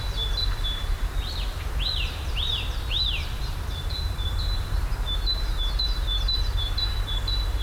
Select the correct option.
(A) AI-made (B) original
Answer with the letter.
A